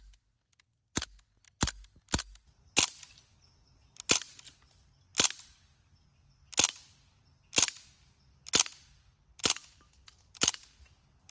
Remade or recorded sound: recorded